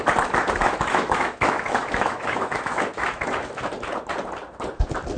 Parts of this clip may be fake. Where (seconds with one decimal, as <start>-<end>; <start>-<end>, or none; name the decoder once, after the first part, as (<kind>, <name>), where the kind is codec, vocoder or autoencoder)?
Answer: 0.6-3.7 (autoencoder, DAC-VAE)